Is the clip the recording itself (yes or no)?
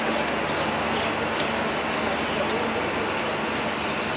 yes